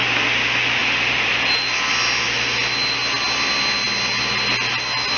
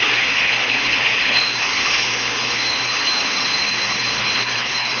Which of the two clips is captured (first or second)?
first